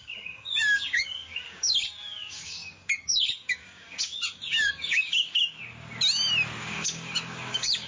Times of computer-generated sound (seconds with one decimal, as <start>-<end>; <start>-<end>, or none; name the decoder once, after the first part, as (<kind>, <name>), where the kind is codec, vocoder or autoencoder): 0.0-5.6 (codec, DAC); 6.6-7.9